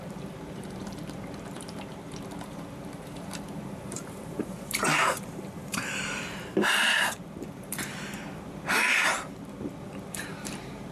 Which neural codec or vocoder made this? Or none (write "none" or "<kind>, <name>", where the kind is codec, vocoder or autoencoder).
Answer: vocoder, BigVGAN v2